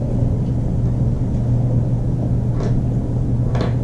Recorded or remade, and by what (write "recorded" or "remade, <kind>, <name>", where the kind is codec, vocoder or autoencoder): recorded